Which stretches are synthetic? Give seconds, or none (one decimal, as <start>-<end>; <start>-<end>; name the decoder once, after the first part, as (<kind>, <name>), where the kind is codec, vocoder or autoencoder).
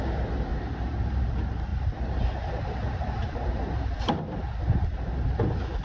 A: 0.5-1.2 (vocoder, BigVGAN v2); 1.7-4.1